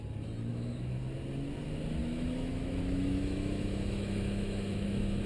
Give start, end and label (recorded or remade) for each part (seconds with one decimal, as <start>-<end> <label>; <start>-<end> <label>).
0.0-0.5 recorded; 0.5-1.0 remade; 1.0-2.0 recorded; 2.0-5.3 remade